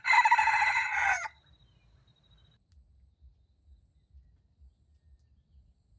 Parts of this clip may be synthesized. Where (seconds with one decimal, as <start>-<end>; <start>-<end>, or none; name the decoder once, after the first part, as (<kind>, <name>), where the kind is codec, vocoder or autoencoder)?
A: 0.4-1.4 (vocoder, HiFi-GAN)